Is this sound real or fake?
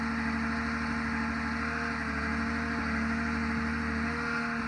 real